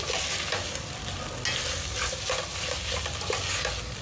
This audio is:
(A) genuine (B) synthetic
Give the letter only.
A